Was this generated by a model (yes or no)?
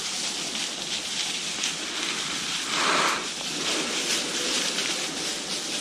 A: no